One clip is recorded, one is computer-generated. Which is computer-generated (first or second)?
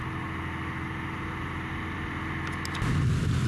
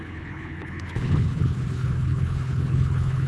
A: second